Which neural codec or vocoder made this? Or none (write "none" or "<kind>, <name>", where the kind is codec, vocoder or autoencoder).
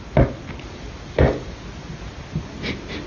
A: none